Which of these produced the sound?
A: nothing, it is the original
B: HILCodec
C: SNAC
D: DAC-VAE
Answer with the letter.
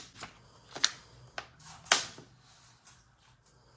A